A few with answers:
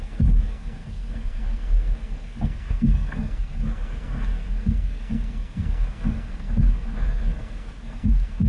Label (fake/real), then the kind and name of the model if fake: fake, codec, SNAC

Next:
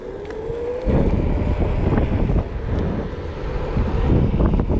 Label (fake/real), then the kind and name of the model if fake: real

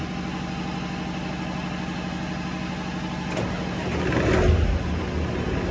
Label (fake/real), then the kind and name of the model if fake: real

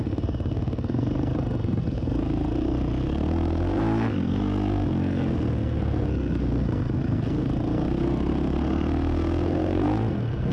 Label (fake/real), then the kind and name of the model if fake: fake, codec, SNAC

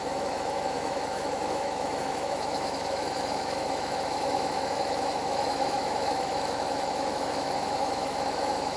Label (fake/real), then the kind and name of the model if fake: fake, autoencoder, DAC-VAE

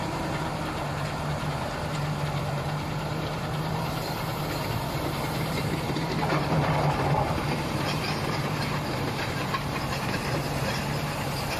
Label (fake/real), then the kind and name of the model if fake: fake, vocoder, BigVGAN v2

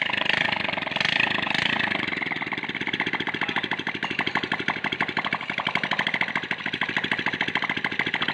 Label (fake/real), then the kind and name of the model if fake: real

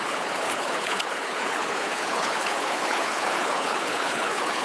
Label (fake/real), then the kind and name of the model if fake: fake, codec, HILCodec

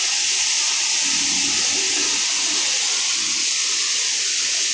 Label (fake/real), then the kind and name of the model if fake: real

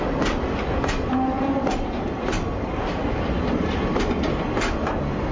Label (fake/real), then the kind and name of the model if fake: real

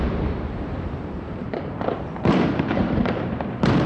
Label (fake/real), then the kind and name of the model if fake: fake, vocoder, BigVGAN v2